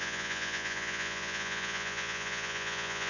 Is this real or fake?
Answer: fake